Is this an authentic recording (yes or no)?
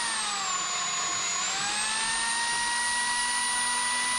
yes